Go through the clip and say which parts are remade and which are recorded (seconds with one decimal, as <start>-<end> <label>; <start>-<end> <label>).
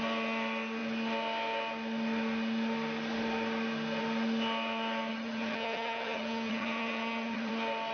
0.0-5.1 recorded; 5.1-7.5 remade; 7.5-7.9 recorded